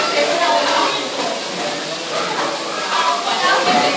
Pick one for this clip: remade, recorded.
recorded